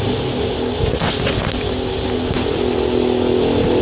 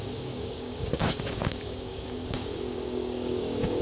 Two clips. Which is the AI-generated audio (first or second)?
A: second